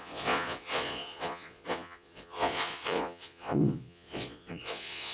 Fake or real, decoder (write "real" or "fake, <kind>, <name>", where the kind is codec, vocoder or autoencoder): fake, vocoder, Vocos